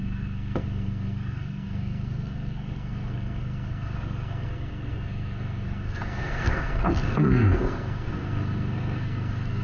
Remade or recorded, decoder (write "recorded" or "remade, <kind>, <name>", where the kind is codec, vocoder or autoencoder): remade, codec, SNAC